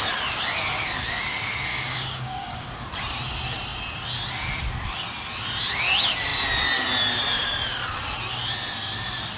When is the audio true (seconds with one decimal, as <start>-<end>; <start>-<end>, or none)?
0.0-1.7; 2.7-9.4

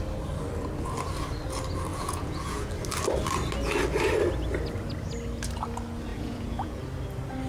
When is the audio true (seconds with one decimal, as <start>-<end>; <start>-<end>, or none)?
0.0-1.9; 2.7-6.1; 6.8-7.5